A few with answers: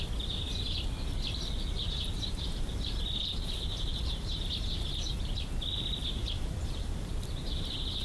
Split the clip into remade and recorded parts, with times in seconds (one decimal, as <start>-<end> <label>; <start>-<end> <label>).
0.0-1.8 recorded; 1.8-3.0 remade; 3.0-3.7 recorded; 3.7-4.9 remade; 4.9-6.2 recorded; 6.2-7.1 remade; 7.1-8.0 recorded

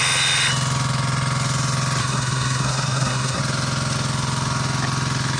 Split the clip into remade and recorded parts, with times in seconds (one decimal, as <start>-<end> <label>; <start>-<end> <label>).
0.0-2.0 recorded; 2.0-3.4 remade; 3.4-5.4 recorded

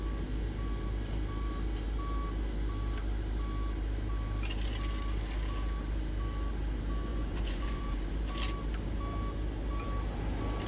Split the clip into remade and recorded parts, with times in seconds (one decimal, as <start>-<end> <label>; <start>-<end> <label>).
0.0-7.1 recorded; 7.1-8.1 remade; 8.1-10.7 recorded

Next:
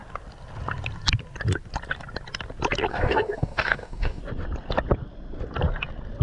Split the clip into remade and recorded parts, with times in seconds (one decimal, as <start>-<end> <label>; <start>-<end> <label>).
0.0-2.9 recorded; 2.9-4.2 remade; 4.2-6.2 recorded

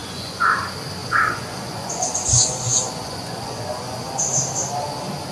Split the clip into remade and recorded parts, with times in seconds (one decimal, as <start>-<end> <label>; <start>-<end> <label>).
0.0-0.6 remade; 0.6-1.0 recorded; 1.0-4.2 remade; 4.2-5.3 recorded

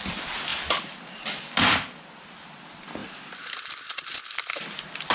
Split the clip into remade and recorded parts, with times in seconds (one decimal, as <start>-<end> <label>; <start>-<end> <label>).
0.0-5.1 recorded

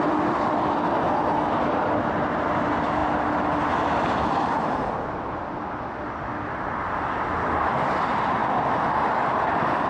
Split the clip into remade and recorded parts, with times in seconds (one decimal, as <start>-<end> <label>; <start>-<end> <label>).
0.0-9.9 recorded